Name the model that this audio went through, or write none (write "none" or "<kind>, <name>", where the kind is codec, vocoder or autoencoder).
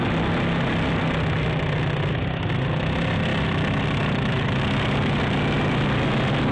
none